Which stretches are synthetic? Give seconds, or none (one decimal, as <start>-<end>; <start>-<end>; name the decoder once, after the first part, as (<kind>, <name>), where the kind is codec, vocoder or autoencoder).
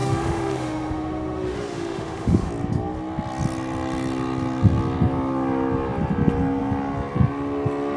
0.0-2.5 (autoencoder, DAC-VAE)